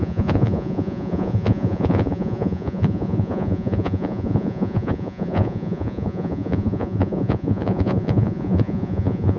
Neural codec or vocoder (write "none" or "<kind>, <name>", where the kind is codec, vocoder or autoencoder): vocoder, Vocos